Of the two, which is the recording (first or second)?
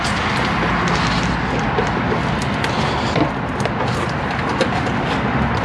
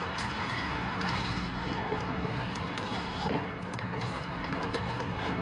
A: first